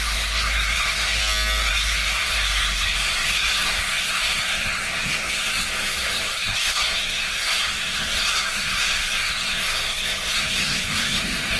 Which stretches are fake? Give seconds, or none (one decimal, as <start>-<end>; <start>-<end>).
0.0-1.2; 1.7-11.6